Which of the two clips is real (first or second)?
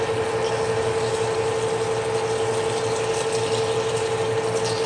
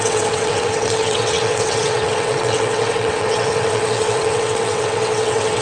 first